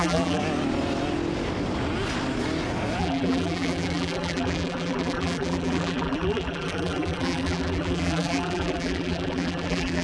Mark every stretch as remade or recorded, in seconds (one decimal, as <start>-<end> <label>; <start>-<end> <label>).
0.0-0.4 remade; 0.4-3.0 recorded; 3.0-10.0 remade